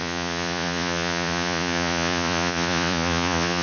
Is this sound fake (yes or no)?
yes